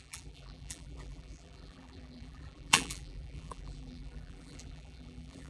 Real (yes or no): no